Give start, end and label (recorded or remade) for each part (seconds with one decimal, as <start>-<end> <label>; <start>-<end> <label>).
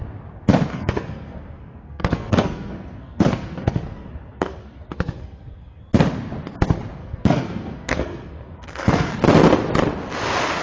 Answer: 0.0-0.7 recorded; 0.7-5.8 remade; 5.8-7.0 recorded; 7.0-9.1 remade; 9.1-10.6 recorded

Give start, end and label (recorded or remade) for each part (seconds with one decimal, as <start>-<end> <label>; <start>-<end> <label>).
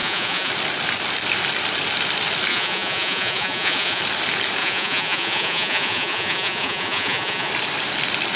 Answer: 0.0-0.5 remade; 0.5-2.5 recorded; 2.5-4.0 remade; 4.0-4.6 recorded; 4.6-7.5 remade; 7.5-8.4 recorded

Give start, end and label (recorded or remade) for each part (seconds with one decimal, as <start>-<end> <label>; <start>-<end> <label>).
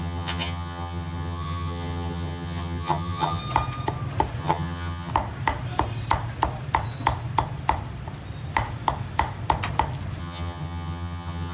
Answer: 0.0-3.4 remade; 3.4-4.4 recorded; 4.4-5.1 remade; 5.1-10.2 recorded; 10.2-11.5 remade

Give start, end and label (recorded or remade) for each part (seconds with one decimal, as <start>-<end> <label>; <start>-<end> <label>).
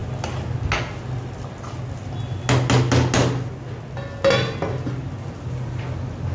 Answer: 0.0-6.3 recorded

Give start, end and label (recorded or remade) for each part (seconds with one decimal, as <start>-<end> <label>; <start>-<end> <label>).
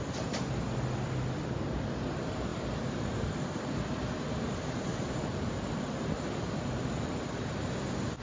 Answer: 0.0-8.2 recorded